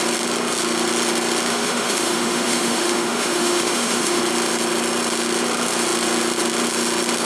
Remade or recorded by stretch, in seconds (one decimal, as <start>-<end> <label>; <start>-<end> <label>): 0.0-1.5 recorded; 1.5-4.2 remade; 4.2-7.2 recorded